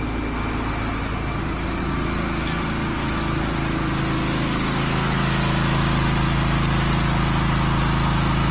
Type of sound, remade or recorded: recorded